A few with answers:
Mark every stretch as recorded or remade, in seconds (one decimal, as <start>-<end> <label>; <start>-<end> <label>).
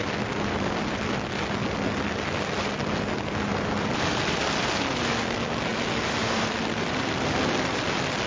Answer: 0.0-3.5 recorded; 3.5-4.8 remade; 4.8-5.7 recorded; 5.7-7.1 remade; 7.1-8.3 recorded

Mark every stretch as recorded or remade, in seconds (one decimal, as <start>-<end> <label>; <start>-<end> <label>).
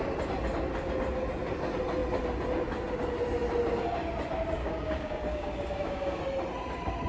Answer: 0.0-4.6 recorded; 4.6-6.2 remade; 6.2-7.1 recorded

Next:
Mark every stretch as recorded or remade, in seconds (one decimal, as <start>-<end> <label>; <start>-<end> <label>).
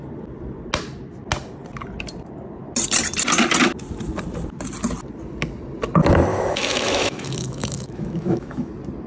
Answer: 0.0-6.3 recorded; 6.3-8.7 remade; 8.7-9.1 recorded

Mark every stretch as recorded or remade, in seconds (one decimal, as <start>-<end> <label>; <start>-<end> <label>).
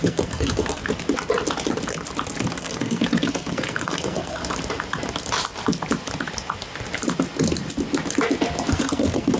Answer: 0.0-0.8 remade; 0.8-2.6 recorded; 2.6-4.4 remade; 4.4-8.7 recorded; 8.7-9.4 remade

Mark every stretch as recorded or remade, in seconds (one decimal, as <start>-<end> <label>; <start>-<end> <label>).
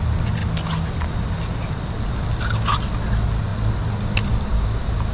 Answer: 0.0-5.1 recorded